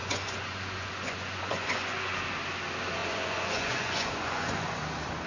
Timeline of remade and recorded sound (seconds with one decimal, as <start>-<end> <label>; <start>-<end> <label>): 0.0-2.2 remade; 2.2-3.0 recorded; 3.0-4.8 remade; 4.8-5.3 recorded